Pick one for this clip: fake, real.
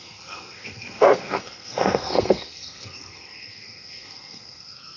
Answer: fake